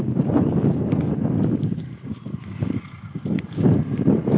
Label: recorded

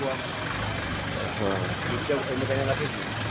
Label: recorded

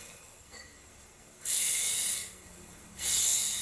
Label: remade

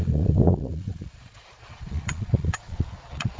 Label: remade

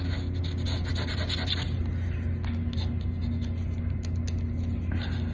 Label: recorded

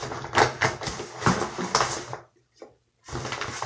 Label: recorded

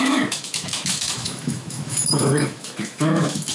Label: remade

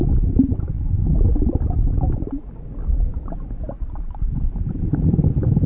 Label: recorded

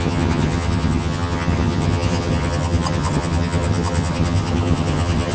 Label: remade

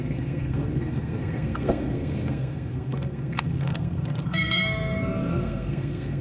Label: remade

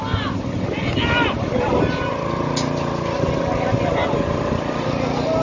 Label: recorded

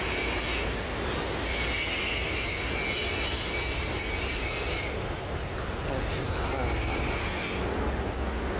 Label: recorded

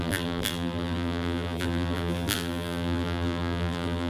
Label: remade